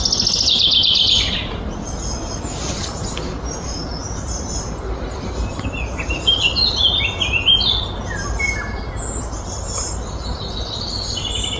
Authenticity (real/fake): real